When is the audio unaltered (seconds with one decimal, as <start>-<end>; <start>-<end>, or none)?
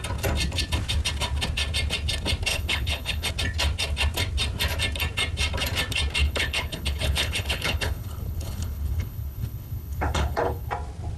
0.0-2.5; 3.3-6.2; 10.7-11.2